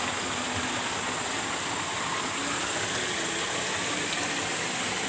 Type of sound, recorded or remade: recorded